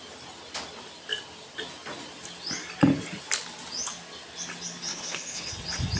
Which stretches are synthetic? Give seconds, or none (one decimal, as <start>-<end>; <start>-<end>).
4.9-5.5

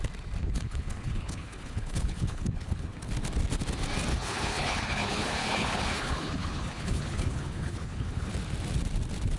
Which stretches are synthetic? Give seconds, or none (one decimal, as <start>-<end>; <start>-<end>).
0.4-3.1; 4.1-8.3